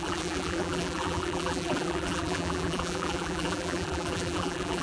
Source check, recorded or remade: remade